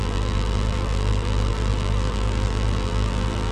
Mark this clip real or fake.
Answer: fake